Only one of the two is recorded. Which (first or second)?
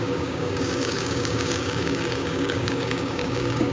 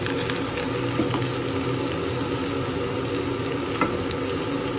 second